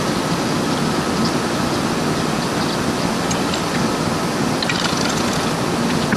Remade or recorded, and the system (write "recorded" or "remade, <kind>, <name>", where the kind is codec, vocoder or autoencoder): recorded